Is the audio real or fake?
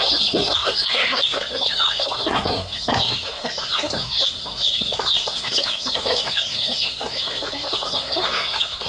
fake